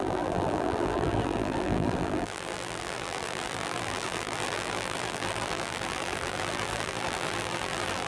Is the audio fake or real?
fake